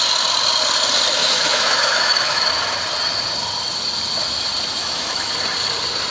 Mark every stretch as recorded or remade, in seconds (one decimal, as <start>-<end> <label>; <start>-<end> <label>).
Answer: 0.0-1.2 recorded; 1.2-2.5 remade; 2.5-4.8 recorded; 4.8-5.3 remade; 5.3-6.1 recorded